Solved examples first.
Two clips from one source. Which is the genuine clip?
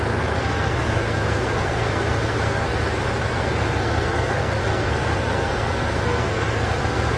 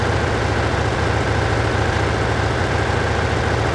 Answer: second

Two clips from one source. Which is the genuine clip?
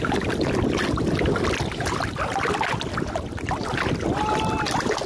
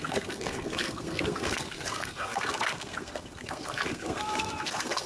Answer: first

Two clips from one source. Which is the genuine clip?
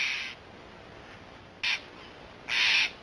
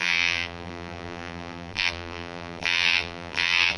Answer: first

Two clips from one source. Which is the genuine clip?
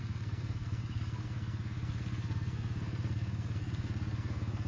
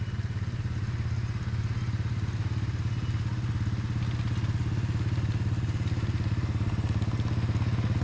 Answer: second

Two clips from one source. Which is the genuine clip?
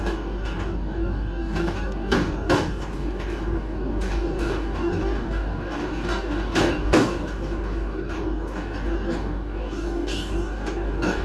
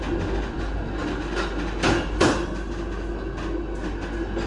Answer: second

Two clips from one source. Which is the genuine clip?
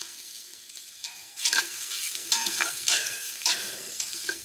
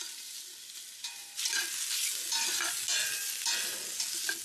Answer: second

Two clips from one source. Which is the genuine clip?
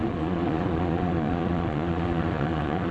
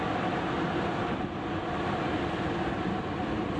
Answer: second